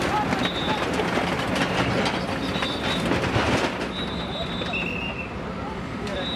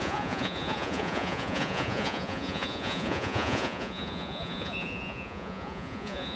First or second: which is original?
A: first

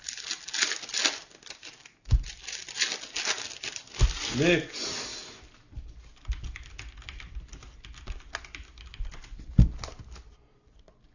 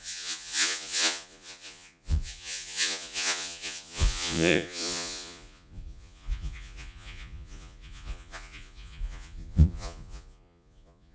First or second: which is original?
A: first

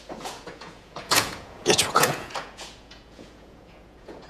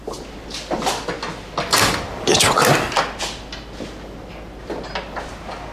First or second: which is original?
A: second